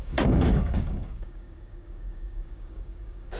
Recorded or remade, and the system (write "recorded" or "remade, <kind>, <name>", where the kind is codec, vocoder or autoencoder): remade, codec, DAC